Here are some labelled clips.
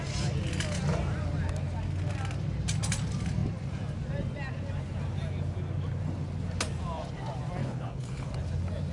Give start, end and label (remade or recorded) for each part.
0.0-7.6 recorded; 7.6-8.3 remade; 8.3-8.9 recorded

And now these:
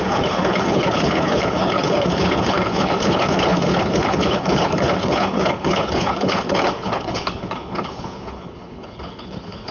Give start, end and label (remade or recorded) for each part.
0.0-9.7 remade

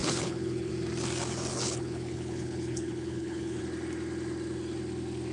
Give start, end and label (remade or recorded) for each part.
0.0-0.7 remade; 0.7-1.5 recorded; 1.5-3.6 remade; 3.6-5.3 recorded

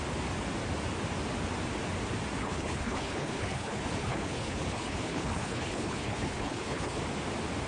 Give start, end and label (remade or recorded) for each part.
0.0-2.4 recorded; 2.4-7.0 remade; 7.0-7.7 recorded

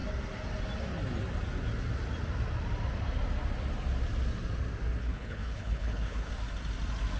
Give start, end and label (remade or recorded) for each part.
0.0-5.0 recorded; 5.0-6.3 remade; 6.3-7.2 recorded

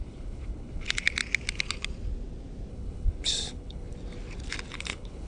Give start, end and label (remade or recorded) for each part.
0.0-1.2 remade; 1.2-2.7 recorded; 2.7-3.9 remade; 3.9-4.7 recorded; 4.7-5.3 remade

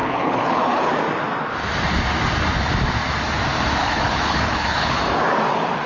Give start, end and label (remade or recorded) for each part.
0.0-0.9 remade; 0.9-3.8 recorded; 3.8-5.0 remade; 5.0-5.9 recorded

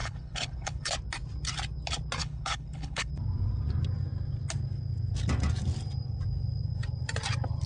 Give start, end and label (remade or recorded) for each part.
0.0-0.9 remade; 0.9-2.2 recorded; 2.2-3.1 remade; 3.1-7.7 recorded